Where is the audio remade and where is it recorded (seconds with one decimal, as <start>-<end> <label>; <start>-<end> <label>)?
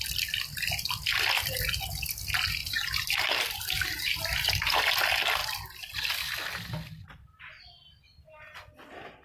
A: 0.0-2.6 recorded; 2.6-4.9 remade; 4.9-9.2 recorded